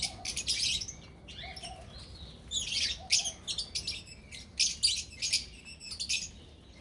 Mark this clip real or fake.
real